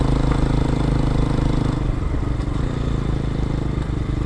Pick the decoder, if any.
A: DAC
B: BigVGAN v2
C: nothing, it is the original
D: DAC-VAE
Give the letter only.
C